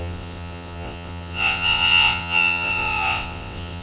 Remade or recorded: remade